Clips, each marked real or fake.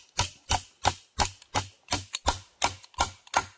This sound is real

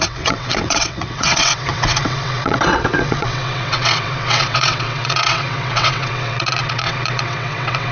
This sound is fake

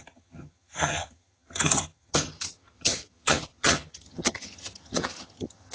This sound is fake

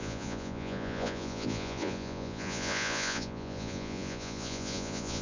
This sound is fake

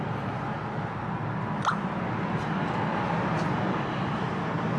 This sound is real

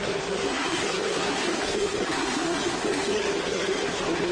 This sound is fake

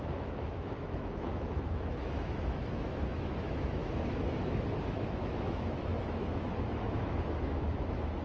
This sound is fake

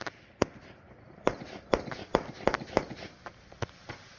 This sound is real